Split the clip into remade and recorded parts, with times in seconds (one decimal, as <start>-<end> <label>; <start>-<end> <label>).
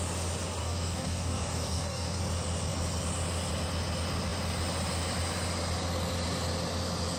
0.0-0.6 recorded; 0.6-2.2 remade; 2.2-7.2 recorded